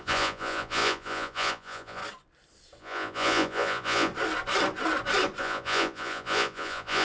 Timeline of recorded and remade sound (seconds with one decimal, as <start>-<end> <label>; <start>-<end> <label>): 0.0-2.0 remade; 2.0-2.8 recorded; 2.8-4.1 remade; 4.1-5.4 recorded; 5.4-7.0 remade